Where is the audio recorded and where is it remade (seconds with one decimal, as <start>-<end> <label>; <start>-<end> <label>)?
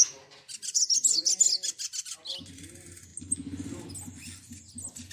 0.0-5.1 recorded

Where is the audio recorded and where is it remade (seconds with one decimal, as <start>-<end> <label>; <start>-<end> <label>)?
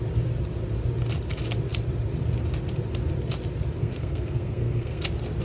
0.0-3.8 recorded; 3.8-5.0 remade; 5.0-5.4 recorded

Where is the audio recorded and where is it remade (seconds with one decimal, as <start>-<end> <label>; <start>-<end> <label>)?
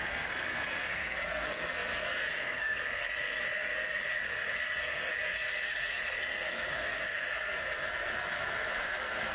0.0-9.3 remade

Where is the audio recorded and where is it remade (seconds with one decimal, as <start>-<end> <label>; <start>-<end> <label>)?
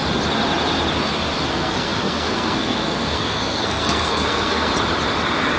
0.0-1.5 recorded; 1.5-4.7 remade; 4.7-5.6 recorded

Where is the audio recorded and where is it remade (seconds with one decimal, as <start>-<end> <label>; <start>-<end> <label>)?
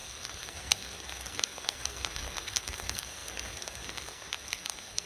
0.0-5.1 remade